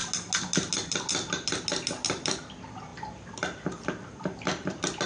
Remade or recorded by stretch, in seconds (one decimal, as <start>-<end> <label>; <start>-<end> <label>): 0.0-5.1 recorded